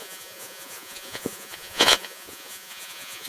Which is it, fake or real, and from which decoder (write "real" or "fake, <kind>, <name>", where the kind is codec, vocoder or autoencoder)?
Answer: fake, vocoder, Vocos